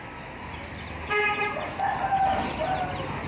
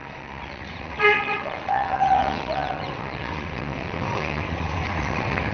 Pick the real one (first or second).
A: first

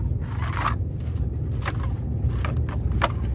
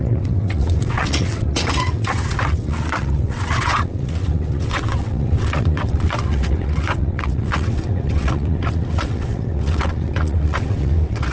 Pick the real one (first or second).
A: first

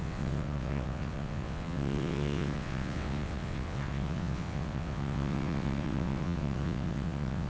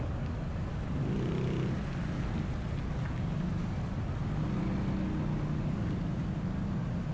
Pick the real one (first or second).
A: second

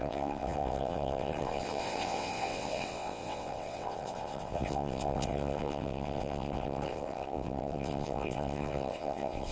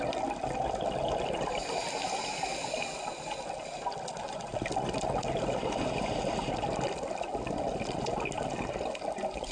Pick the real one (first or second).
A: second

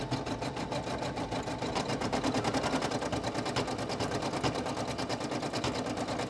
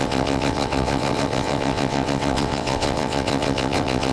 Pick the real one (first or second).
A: first